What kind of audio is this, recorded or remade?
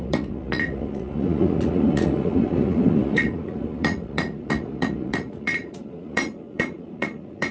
remade